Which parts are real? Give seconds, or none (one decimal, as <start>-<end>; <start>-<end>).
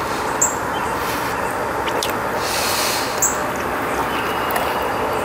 0.0-5.2